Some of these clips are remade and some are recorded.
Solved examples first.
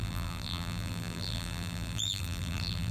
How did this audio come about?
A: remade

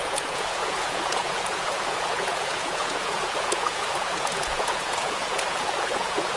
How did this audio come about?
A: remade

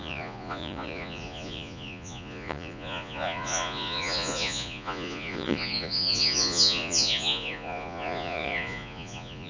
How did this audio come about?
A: remade